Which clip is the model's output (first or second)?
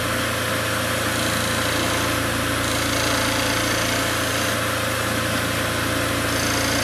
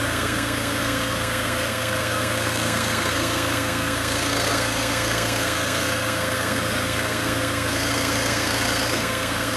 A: second